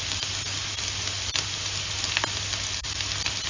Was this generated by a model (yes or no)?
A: no